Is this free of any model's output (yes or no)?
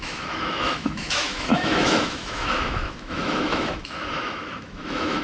no